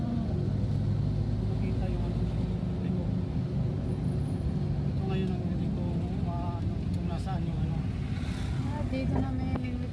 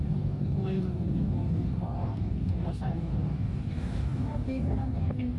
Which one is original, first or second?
first